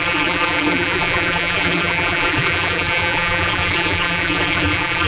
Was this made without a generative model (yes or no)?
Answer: no